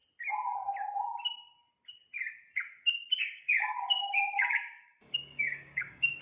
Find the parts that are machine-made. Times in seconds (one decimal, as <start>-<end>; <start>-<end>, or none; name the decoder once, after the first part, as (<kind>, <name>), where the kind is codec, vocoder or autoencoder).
3.2-6.2 (codec, DAC)